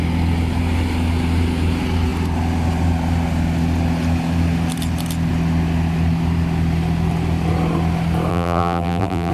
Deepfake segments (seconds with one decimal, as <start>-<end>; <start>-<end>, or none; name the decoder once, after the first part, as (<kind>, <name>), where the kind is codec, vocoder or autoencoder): 8.3-9.3 (vocoder, BigVGAN v2)